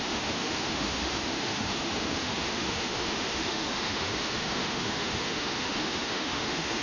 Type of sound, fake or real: fake